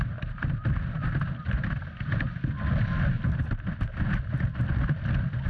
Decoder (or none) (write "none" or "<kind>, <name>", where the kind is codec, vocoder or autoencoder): none